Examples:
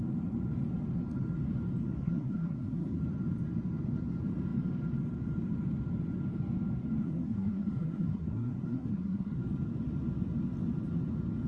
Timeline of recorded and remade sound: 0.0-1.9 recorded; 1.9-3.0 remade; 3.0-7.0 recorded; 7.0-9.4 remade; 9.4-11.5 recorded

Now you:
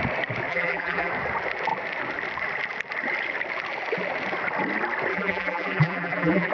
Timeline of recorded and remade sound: 0.0-0.5 recorded; 0.5-1.1 remade; 1.1-5.1 recorded; 5.1-6.5 remade

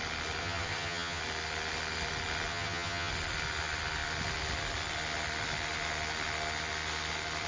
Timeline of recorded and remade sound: 0.0-0.4 recorded; 0.4-1.2 remade; 1.2-2.5 recorded; 2.5-3.1 remade; 3.1-7.5 recorded

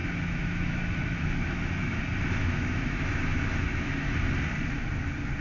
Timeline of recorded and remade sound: 0.0-2.0 remade; 2.0-2.4 recorded; 2.4-4.1 remade; 4.1-5.4 recorded